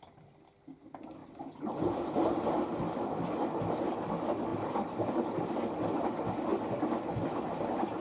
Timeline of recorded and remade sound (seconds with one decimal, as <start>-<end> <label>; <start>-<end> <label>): 0.0-8.0 recorded